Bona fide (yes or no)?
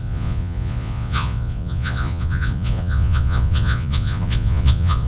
no